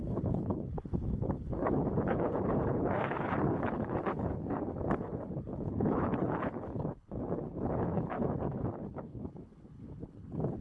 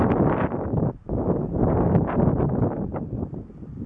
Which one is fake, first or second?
first